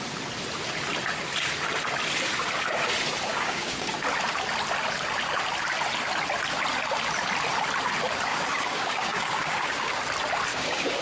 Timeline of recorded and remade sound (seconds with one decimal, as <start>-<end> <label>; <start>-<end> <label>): 0.0-3.3 recorded; 3.3-3.9 remade; 3.9-8.3 recorded; 8.3-10.0 remade; 10.0-10.5 recorded; 10.5-11.0 remade